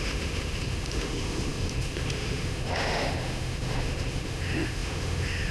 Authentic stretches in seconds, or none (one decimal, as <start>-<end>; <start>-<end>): none